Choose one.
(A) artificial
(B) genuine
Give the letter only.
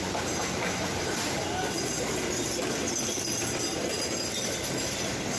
B